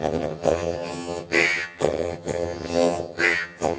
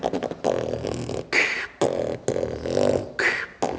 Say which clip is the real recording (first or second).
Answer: second